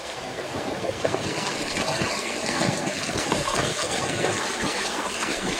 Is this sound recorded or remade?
remade